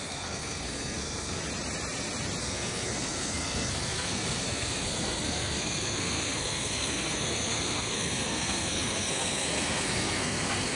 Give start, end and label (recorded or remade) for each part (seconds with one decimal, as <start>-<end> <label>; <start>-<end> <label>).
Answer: 0.0-1.4 remade; 1.4-2.4 recorded; 2.4-10.8 remade